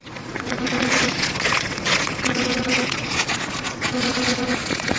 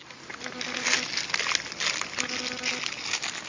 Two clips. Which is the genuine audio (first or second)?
second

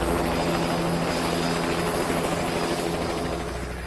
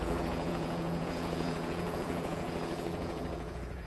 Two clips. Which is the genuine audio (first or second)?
first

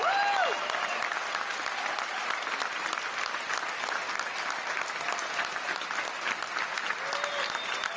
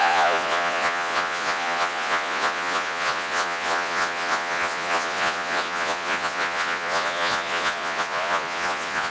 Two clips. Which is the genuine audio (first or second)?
first